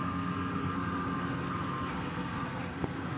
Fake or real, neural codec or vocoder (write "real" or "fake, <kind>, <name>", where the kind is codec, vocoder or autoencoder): fake, codec, SNAC